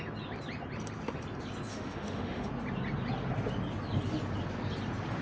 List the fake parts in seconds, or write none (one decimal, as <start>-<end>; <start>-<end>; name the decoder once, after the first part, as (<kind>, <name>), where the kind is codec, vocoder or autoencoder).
1.7-2.5 (autoencoder, DAC-VAE)